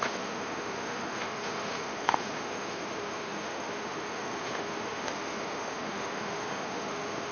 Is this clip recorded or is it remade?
remade